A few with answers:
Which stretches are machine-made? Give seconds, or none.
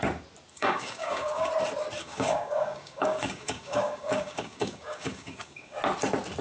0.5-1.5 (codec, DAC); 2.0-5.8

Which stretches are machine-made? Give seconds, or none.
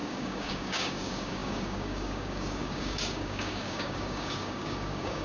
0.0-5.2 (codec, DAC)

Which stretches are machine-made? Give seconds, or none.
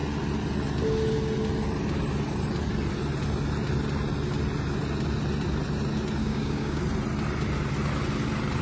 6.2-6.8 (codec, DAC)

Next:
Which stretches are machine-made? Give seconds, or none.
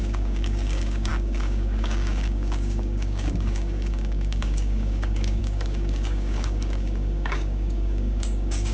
0.0-8.7 (codec, DAC)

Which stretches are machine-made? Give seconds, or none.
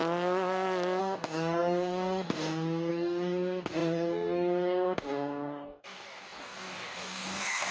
1.0-7.7 (codec, DAC)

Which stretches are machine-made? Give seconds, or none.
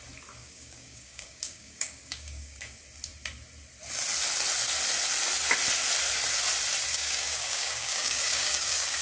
0.4-2.8 (codec, DAC); 6.9-9.0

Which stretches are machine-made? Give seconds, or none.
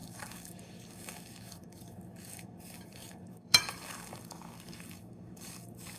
0.0-6.0 (codec, DAC)